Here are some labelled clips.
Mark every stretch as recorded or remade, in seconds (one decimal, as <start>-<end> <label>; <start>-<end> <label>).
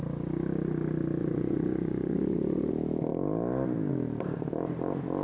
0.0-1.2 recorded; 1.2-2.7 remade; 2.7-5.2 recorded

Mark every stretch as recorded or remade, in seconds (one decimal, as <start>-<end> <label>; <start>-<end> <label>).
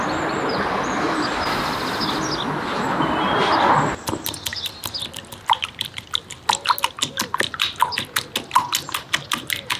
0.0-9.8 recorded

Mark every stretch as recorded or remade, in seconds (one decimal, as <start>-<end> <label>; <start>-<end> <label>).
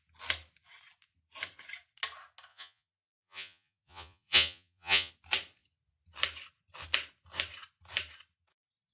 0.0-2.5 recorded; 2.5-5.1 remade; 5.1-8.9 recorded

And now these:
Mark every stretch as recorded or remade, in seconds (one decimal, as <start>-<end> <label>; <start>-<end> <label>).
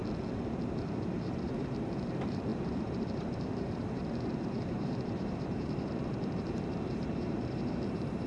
0.0-0.7 recorded; 0.7-8.3 remade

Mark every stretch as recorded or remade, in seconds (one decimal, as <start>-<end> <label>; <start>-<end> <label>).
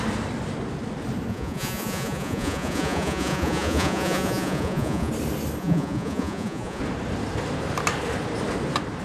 0.0-1.3 recorded; 1.3-5.1 remade; 5.1-5.6 recorded; 5.6-6.8 remade; 6.8-9.0 recorded